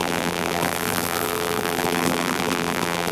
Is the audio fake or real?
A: fake